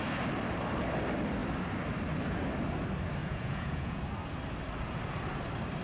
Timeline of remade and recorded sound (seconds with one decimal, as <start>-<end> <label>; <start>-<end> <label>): 0.0-3.2 recorded; 3.2-4.0 remade; 4.0-5.8 recorded